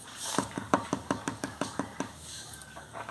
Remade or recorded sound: remade